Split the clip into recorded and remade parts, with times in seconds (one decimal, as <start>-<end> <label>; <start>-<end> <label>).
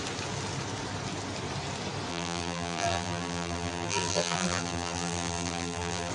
0.0-2.1 recorded; 2.1-6.1 remade